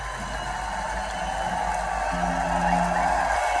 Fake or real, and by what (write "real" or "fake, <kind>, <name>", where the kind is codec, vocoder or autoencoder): real